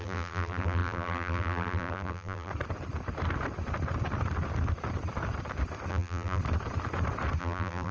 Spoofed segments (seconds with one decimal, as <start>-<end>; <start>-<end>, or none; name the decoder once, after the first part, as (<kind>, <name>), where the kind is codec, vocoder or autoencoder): 0.0-2.5 (vocoder, BigVGAN v2); 5.9-6.4; 7.4-7.9